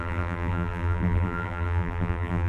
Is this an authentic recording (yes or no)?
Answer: no